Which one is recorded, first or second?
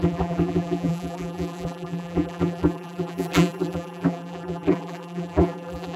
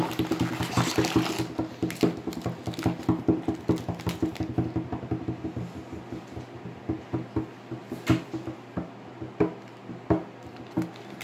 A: second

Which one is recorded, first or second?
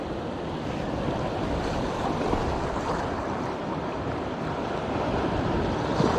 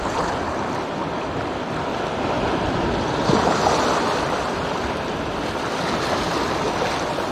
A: second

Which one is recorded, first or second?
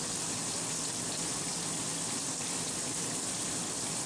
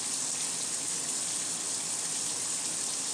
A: second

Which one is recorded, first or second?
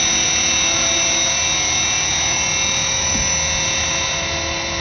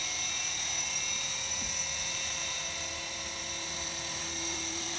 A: first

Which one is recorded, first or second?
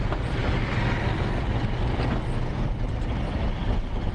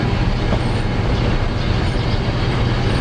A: second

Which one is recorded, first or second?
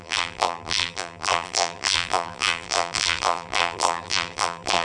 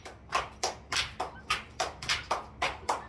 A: second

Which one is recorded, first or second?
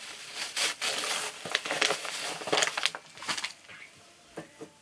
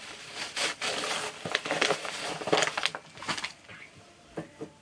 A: first